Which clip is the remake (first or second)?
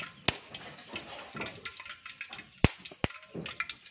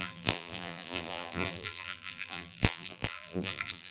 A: second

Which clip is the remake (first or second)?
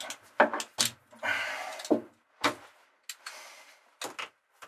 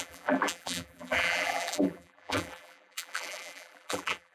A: second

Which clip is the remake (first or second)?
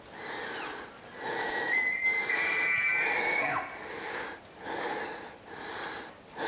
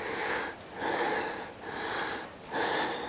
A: first